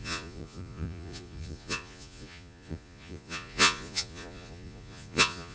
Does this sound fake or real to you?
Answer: fake